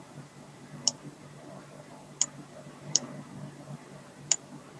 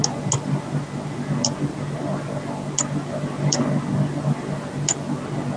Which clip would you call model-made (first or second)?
first